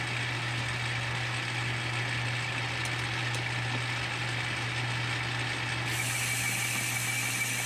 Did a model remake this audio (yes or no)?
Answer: no